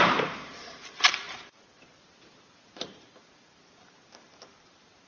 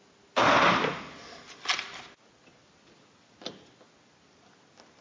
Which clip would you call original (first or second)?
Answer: second